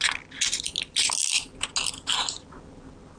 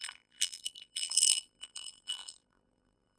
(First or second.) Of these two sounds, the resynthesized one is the second